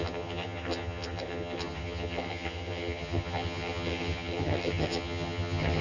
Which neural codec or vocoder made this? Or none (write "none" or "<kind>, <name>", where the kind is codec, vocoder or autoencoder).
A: vocoder, HiFi-GAN